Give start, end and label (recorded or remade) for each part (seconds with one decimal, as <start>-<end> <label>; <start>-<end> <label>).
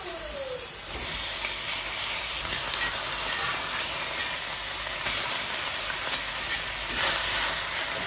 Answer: 0.0-8.1 recorded